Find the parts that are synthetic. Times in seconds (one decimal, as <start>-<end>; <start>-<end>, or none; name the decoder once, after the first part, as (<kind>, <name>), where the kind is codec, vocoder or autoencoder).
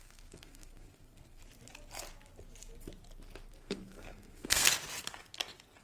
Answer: 0.0-1.4 (codec, SNAC); 3.5-4.7